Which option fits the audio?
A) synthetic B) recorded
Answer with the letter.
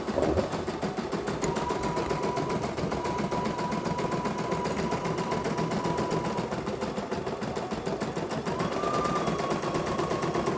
B